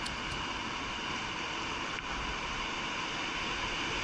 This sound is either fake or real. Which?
real